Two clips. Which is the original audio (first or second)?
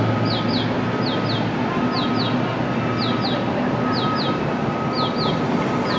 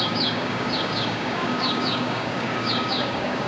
first